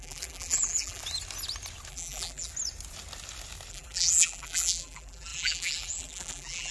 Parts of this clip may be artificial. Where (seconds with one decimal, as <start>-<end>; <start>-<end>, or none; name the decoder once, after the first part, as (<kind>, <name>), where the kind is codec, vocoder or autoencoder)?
0.0-1.0 (vocoder, BigVGAN v2); 1.9-2.5; 3.7-6.7